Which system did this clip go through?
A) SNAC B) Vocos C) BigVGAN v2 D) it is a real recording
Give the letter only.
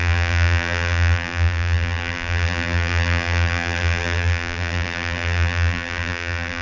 C